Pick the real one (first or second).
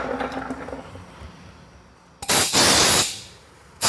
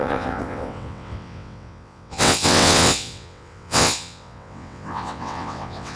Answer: first